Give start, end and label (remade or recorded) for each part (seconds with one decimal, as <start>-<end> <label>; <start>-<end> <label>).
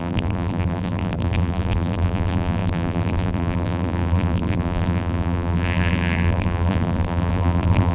0.0-7.9 remade